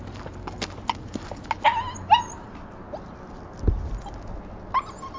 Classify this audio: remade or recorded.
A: recorded